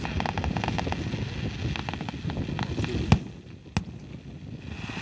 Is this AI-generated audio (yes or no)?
no